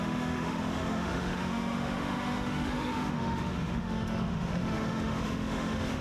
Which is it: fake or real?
fake